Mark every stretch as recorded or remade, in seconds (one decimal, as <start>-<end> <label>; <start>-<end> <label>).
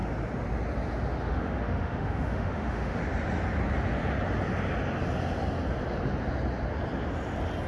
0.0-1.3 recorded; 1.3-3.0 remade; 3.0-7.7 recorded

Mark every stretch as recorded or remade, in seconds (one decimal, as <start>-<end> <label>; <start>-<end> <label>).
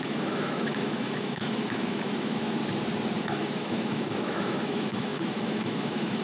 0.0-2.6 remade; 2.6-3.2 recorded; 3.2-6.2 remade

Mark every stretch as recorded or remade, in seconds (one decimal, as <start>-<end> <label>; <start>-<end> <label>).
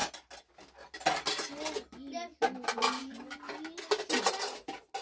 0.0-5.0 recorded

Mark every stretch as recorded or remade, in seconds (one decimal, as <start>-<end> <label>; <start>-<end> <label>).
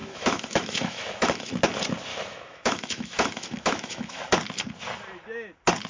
0.0-1.5 remade; 1.5-2.1 recorded; 2.1-4.2 remade; 4.2-5.9 recorded